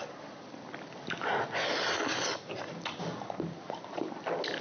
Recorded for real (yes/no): yes